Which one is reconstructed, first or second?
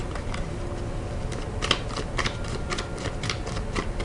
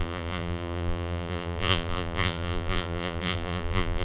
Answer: second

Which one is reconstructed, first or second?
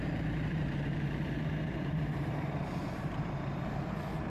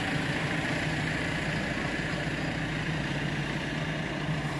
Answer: first